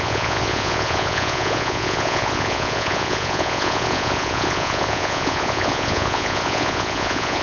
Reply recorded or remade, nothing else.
remade